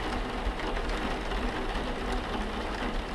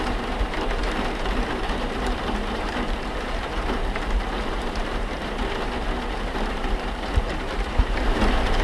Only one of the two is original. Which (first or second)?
first